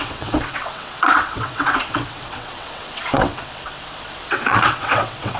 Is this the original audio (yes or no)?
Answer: no